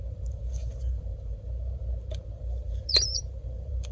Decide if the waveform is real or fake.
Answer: fake